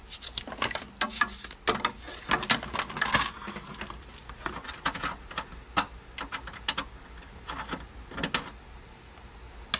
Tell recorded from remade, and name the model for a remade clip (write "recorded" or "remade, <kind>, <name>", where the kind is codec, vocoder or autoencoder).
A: recorded